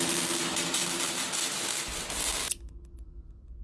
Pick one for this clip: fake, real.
real